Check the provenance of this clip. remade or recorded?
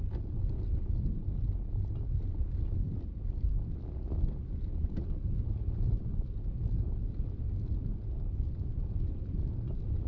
recorded